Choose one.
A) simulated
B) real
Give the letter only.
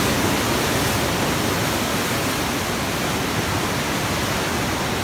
B